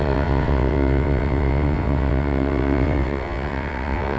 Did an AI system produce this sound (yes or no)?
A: yes